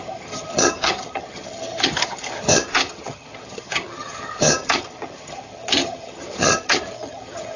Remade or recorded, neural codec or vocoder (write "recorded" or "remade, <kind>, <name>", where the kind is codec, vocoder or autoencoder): remade, vocoder, HiFi-GAN